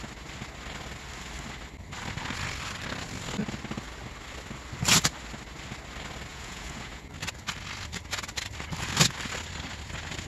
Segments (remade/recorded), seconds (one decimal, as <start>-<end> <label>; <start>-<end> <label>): 0.0-6.3 recorded; 6.3-7.1 remade; 7.1-10.3 recorded